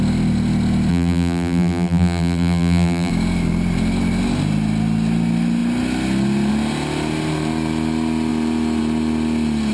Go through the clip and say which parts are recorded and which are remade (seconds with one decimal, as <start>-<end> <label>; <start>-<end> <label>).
0.0-0.9 recorded; 0.9-3.1 remade; 3.1-9.7 recorded